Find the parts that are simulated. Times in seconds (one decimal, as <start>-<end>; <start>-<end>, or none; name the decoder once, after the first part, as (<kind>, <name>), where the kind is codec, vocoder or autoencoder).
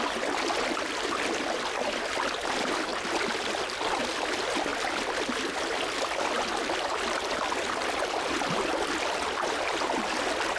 none